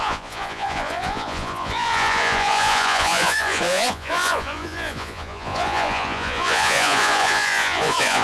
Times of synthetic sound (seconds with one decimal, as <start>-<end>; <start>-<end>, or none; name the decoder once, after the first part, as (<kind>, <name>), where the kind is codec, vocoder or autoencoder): 0.0-8.2 (vocoder, Vocos)